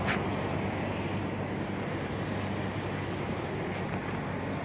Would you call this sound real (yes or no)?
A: yes